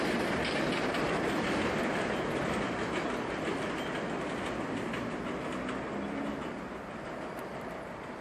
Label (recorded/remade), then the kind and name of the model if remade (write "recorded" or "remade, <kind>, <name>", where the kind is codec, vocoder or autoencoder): recorded